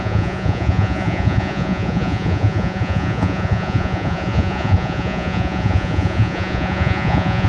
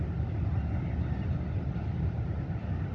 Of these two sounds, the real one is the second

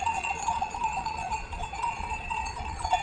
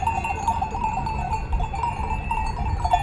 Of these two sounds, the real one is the second